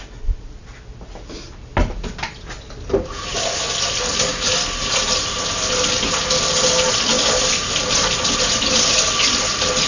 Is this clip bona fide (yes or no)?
yes